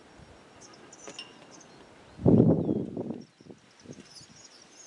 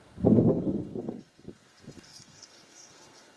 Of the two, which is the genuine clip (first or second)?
first